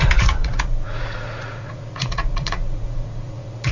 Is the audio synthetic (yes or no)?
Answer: yes